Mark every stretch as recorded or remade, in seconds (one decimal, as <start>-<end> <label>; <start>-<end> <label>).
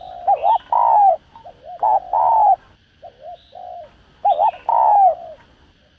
0.0-6.0 recorded